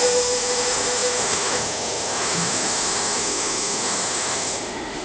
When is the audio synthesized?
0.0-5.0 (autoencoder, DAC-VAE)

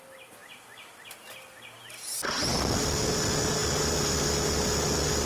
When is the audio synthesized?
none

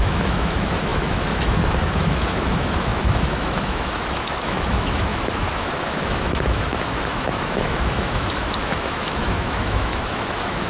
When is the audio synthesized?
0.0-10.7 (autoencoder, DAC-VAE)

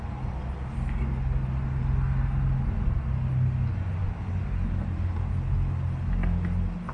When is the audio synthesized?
none

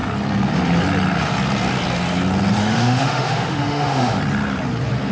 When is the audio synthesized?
2.6-4.2 (autoencoder, DAC-VAE)

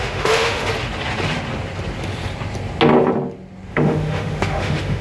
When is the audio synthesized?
0.0-0.7 (autoencoder, DAC-VAE); 3.7-5.0

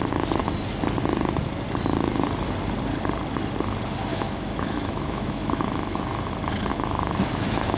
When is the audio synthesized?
4.1-6.3 (autoencoder, DAC-VAE); 6.7-7.8

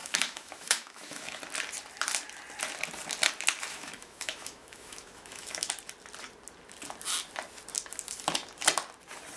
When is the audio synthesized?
0.0-1.4 (autoencoder, DAC-VAE); 3.7-5.7